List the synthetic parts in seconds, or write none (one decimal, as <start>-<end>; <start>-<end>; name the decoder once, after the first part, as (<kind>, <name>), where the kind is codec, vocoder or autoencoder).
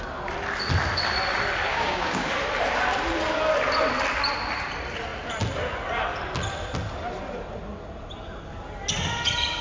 1.7-2.3 (codec, DAC)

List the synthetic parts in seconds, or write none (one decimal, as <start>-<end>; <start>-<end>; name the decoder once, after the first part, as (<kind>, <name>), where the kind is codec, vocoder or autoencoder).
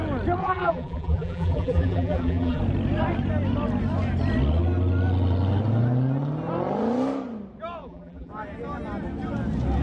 0.4-2.6 (vocoder, BigVGAN v2); 7.8-8.3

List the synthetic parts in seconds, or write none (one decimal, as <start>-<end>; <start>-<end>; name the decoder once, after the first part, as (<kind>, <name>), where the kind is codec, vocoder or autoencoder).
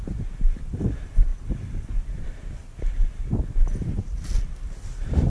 0.0-5.3 (vocoder, BigVGAN v2)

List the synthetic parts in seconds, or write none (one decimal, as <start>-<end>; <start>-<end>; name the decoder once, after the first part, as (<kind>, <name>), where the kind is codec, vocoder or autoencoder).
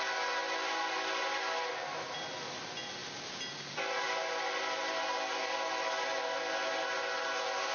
none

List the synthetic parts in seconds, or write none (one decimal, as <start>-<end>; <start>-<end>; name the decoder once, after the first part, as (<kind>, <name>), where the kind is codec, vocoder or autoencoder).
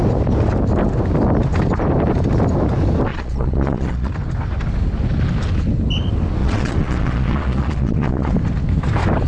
3.1-4.1 (vocoder, Vocos); 6.4-8.3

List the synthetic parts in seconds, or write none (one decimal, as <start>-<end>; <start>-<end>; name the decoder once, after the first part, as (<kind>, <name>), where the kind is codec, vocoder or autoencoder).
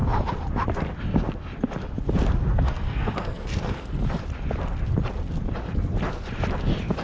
2.5-4.0 (codec, SNAC)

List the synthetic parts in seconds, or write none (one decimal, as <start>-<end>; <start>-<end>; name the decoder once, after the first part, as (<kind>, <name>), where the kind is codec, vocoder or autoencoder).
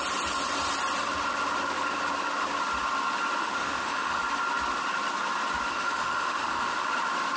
3.4-4.2 (autoencoder, DAC-VAE); 5.7-6.8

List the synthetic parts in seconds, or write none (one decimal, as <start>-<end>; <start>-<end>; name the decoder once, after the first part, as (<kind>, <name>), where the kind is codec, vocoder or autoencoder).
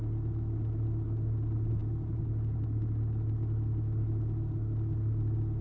none